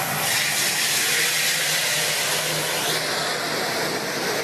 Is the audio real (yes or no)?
yes